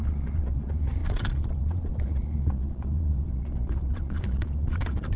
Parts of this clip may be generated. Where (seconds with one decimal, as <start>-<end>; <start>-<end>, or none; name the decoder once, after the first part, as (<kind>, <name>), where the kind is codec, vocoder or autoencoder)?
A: 0.0-5.2 (vocoder, Vocos)